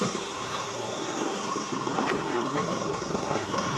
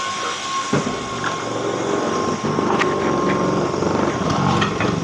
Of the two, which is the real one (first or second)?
second